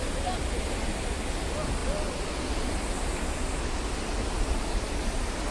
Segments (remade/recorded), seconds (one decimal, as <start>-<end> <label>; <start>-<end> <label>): 0.0-5.5 recorded